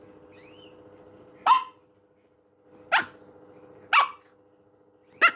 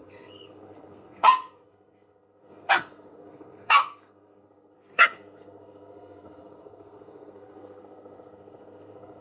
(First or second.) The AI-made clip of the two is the second